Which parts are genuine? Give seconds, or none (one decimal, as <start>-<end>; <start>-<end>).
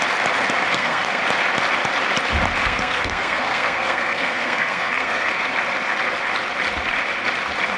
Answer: 0.0-0.7; 1.2-2.6; 5.3-7.8